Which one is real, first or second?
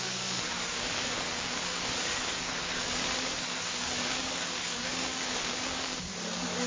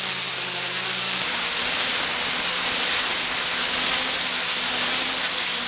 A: second